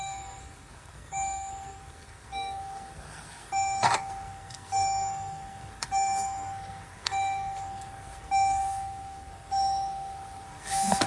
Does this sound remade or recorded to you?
remade